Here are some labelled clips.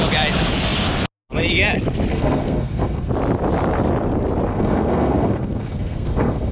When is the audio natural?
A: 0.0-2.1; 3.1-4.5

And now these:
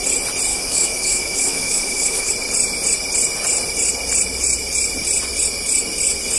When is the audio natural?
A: 0.0-0.5; 2.3-6.4